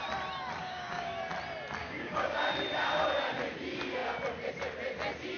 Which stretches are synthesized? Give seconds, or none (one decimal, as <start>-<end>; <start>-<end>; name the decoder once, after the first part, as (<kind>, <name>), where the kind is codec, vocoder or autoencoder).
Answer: 0.6-1.2 (codec, DAC); 1.8-2.4